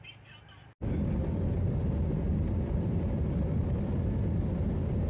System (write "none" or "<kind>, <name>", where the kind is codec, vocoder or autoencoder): none